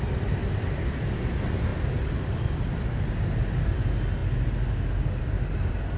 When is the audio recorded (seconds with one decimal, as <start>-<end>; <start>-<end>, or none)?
0.0-0.4; 1.1-6.0